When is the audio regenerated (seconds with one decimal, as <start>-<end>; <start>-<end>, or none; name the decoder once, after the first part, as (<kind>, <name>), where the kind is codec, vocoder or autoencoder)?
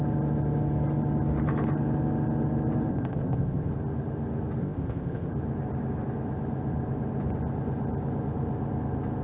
2.9-3.7 (codec, ZipCodec); 4.6-5.3